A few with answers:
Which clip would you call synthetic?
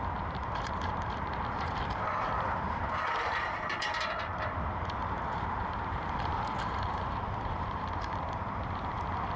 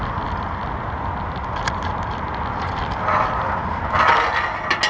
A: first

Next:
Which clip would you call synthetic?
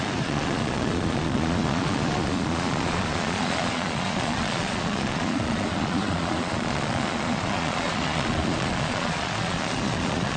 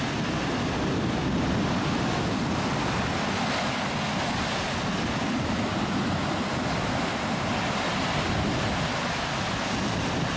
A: first